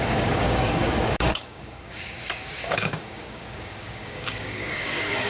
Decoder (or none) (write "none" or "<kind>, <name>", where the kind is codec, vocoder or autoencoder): codec, DAC